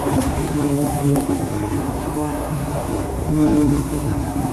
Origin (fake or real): fake